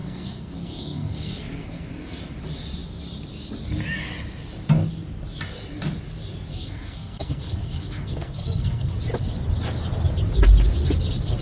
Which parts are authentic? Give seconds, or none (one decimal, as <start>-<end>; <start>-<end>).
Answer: 2.2-6.5; 8.9-11.4